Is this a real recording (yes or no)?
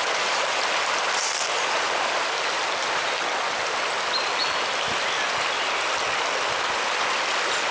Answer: yes